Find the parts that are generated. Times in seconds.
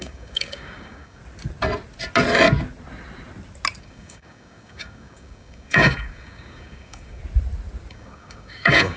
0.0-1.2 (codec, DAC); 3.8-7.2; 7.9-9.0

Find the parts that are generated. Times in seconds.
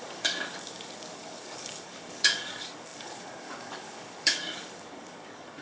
0.0-5.6 (codec, DAC)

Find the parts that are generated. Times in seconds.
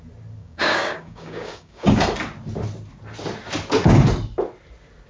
0.4-2.0 (codec, DAC)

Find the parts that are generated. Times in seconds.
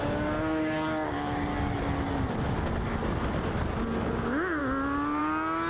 0.0-1.5 (codec, DAC); 4.1-4.6; 5.2-5.7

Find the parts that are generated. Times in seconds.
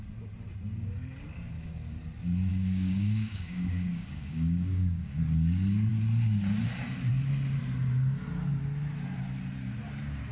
2.5-5.2 (codec, DAC)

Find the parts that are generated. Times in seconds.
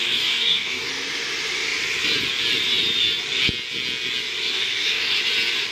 0.0-0.9 (codec, DAC); 4.5-5.2